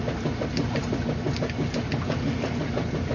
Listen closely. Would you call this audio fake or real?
real